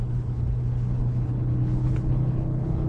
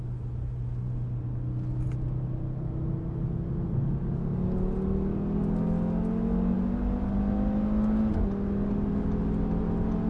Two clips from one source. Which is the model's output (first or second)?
first